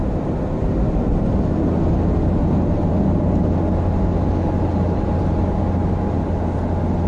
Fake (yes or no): no